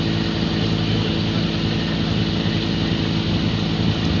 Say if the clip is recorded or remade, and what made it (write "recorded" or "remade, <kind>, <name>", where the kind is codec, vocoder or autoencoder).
recorded